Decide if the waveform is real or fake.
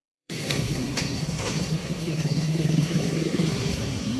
fake